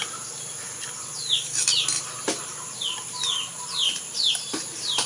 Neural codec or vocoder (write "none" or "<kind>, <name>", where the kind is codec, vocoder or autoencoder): none